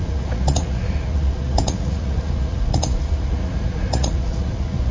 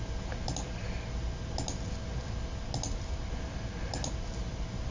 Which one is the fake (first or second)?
first